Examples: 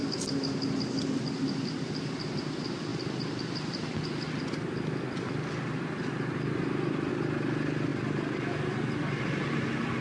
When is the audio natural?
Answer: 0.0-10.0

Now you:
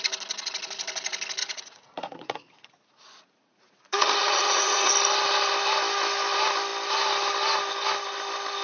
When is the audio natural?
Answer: 0.0-1.4; 4.9-8.6

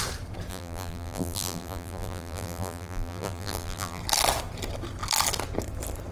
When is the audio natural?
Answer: 0.0-0.5; 4.0-6.1

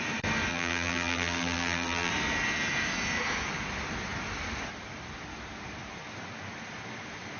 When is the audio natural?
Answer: 0.0-0.5; 2.1-7.4

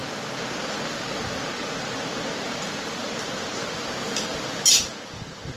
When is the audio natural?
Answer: 0.0-5.6

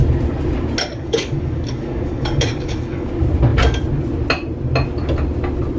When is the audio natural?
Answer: 0.0-0.9; 3.1-5.8

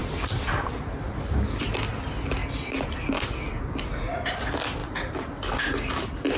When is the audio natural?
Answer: 0.7-4.8; 5.9-6.4